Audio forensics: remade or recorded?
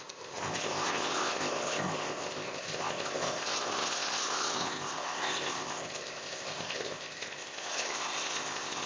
remade